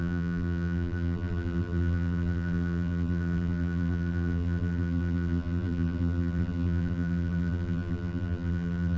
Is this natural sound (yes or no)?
no